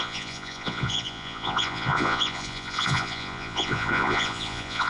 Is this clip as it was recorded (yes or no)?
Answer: no